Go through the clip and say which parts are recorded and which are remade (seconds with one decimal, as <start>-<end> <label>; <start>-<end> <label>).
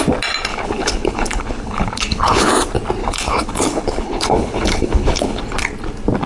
0.0-0.5 recorded; 0.5-2.5 remade; 2.5-3.0 recorded; 3.0-5.4 remade; 5.4-6.3 recorded